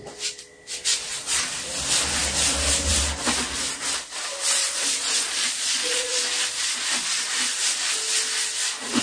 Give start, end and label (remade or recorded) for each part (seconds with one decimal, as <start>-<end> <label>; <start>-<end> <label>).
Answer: 0.0-0.9 recorded; 0.9-1.5 remade; 1.5-4.6 recorded; 4.6-6.2 remade; 6.2-9.0 recorded

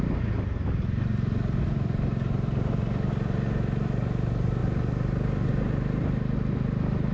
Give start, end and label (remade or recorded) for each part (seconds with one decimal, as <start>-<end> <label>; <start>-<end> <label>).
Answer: 0.0-7.1 recorded

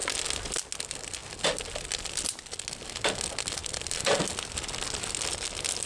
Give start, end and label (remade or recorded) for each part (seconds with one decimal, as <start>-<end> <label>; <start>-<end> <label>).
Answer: 0.0-5.9 recorded

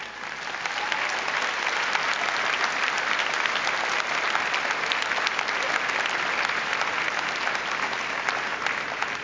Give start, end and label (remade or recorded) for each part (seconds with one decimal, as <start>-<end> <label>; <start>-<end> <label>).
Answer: 0.0-9.2 recorded

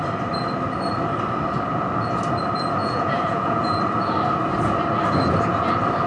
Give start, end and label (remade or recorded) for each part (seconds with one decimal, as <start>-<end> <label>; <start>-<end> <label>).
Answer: 0.0-2.8 recorded; 2.8-3.8 remade; 3.8-6.1 recorded

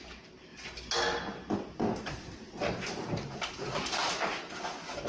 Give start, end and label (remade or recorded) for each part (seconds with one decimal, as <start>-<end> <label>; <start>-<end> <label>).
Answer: 0.0-5.1 recorded